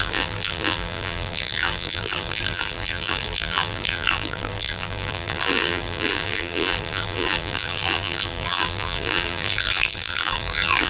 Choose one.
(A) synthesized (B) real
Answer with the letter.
A